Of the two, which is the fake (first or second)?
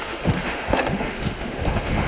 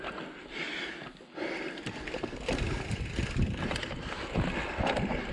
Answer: first